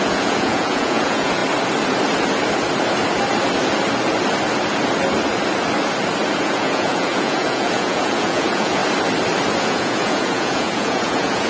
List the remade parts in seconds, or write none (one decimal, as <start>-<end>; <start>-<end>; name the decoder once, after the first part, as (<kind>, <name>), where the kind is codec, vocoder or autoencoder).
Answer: 0.0-1.4 (vocoder, Vocos); 6.4-8.8; 9.6-11.5